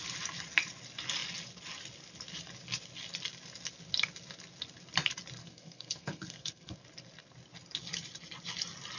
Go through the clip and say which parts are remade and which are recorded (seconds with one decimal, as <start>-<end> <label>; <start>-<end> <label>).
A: 0.0-5.4 recorded; 5.4-6.7 remade; 6.7-9.0 recorded